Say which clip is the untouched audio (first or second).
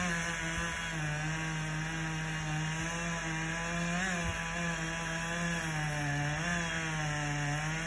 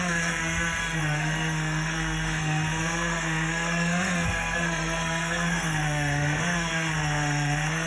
first